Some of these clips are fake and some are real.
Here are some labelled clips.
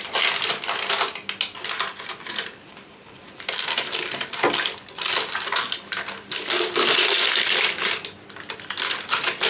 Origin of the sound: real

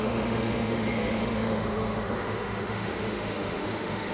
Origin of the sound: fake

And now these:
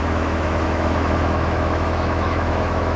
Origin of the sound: fake